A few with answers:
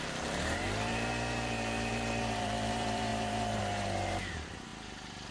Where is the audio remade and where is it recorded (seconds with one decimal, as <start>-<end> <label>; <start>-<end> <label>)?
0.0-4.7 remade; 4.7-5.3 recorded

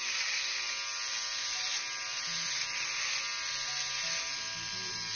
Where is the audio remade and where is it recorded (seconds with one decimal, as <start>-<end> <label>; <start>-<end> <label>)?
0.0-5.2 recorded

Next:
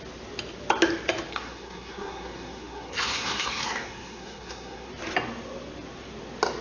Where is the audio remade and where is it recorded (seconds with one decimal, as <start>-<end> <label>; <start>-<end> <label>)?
0.0-1.3 recorded; 1.3-4.9 remade; 4.9-6.6 recorded

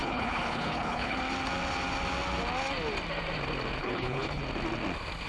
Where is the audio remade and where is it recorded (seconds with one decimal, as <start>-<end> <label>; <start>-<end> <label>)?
0.0-1.2 remade; 1.2-3.8 recorded; 3.8-4.4 remade; 4.4-5.3 recorded

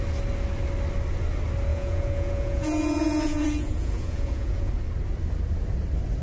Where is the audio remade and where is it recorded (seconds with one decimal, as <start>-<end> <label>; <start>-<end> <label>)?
0.0-1.7 recorded; 1.7-4.7 remade; 4.7-6.2 recorded

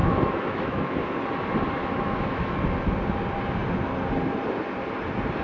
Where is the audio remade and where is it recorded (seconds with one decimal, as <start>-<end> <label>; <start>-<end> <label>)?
0.0-1.0 remade; 1.0-1.8 recorded; 1.8-2.6 remade; 2.6-5.4 recorded